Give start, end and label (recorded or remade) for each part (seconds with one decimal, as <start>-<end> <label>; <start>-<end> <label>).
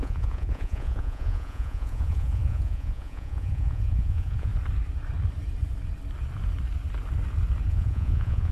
0.0-4.5 remade; 4.5-7.7 recorded; 7.7-8.5 remade